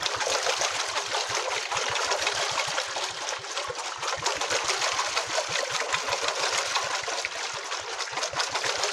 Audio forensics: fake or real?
real